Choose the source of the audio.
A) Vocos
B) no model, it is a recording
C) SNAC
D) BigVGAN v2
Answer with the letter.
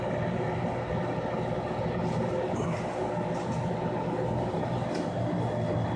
B